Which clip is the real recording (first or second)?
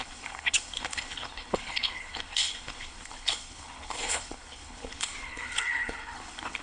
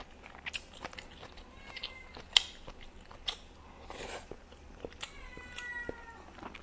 second